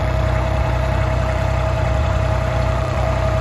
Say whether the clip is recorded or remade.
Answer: remade